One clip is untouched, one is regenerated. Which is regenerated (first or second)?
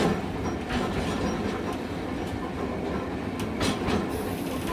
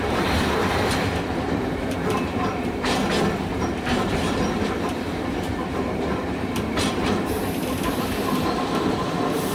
second